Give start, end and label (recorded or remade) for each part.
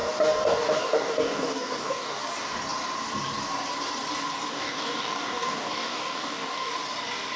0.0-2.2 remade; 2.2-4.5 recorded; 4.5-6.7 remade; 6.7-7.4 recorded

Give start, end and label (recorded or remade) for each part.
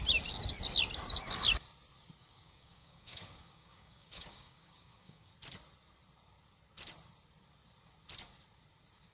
0.0-2.2 recorded; 2.2-5.3 remade; 5.3-9.1 recorded